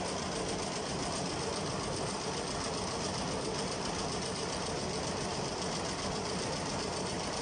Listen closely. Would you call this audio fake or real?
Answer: real